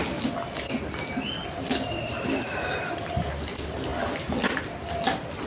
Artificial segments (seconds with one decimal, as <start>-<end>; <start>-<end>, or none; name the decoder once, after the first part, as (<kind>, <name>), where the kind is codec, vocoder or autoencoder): none